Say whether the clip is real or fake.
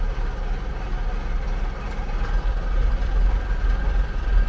real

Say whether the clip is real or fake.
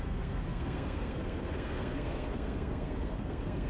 fake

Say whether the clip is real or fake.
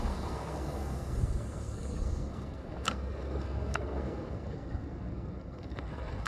fake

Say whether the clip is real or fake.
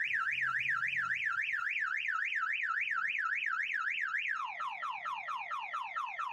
fake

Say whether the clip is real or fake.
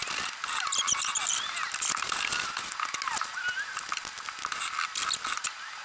real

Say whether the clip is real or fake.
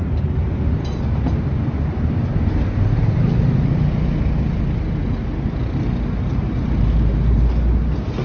real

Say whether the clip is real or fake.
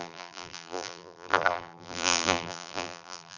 fake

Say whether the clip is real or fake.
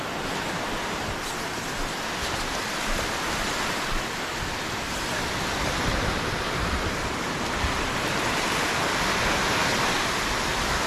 real